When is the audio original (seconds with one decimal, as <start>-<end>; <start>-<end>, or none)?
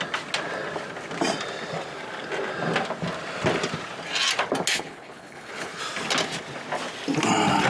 0.0-4.7; 5.8-7.7